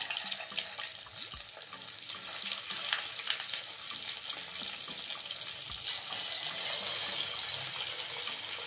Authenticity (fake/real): real